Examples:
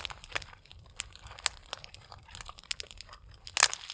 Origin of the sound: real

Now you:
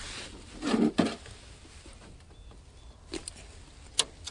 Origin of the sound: real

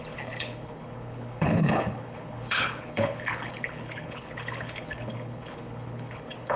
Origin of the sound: fake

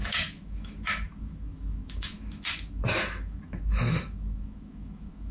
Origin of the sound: fake